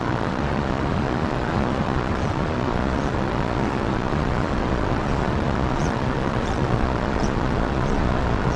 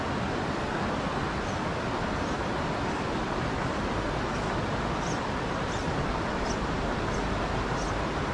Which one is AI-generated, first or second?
first